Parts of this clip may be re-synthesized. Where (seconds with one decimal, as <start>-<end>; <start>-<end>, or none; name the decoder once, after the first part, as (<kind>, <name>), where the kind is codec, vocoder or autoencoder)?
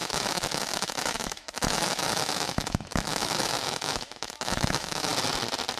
0.0-5.1 (autoencoder, DAC-VAE)